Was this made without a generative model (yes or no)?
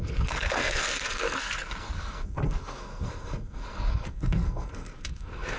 no